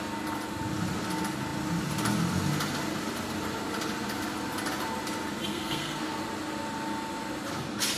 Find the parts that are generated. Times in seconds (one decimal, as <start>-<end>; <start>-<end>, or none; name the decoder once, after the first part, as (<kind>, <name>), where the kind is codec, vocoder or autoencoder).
5.5-6.2 (codec, SNAC)